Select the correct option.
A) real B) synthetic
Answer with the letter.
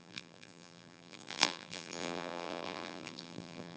B